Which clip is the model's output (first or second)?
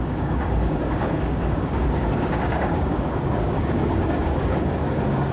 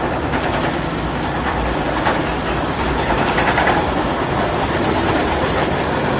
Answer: first